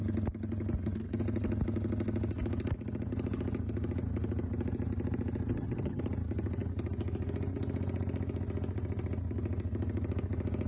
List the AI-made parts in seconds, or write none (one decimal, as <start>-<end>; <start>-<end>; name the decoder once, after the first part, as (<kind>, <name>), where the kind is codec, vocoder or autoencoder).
5.5-6.0 (vocoder, HiFi-GAN)